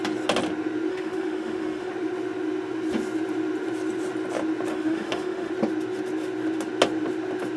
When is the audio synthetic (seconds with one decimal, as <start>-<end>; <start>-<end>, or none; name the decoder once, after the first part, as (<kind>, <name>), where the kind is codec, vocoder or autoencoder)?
0.9-1.9 (autoencoder, DAC-VAE); 4.7-5.5